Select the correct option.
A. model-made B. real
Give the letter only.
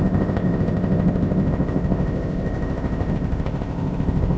A